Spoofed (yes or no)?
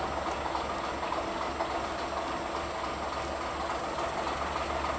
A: no